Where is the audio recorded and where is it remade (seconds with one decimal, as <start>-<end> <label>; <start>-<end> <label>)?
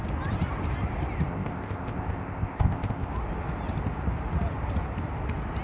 0.0-1.3 recorded; 1.3-3.1 remade; 3.1-5.6 recorded